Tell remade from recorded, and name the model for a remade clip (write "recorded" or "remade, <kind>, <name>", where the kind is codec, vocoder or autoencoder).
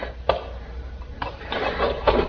remade, vocoder, BigVGAN v2